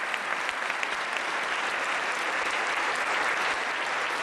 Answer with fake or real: real